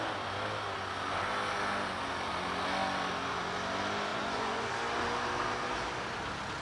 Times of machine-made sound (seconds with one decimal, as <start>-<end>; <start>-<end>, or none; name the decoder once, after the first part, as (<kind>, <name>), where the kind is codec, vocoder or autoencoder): 4.1-4.7 (vocoder, Vocos)